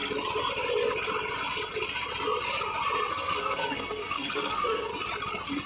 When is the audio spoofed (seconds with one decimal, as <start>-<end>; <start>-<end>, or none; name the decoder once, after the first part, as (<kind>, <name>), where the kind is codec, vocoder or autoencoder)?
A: 3.1-4.9 (codec, SNAC)